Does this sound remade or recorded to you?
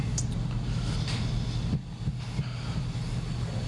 recorded